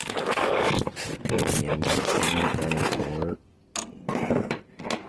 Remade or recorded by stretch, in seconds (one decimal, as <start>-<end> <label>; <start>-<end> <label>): 0.0-5.1 recorded